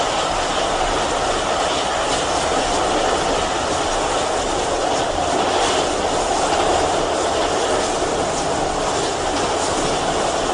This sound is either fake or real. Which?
real